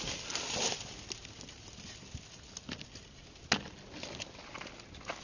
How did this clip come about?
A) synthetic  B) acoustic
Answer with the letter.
B